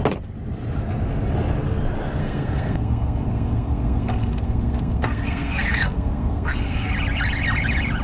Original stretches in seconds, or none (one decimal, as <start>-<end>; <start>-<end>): 0.0-2.2; 6.9-8.0